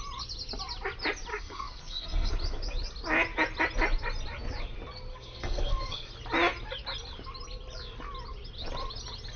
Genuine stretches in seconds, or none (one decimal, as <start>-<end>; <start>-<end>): 0.0-1.3; 2.3-5.1; 6.1-9.4